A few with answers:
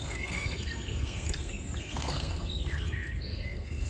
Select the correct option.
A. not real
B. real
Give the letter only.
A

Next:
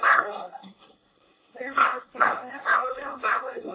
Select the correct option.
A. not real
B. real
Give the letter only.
A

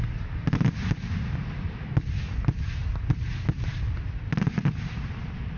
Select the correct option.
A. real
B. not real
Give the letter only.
A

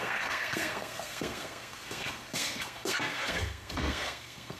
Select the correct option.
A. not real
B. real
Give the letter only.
A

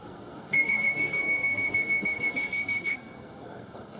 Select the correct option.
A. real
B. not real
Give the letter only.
B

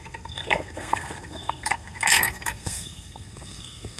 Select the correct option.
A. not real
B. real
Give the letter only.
A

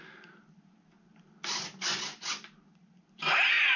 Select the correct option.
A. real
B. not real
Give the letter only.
A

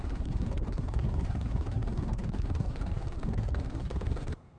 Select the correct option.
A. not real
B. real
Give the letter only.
A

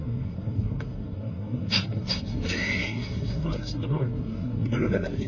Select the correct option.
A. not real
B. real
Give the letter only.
A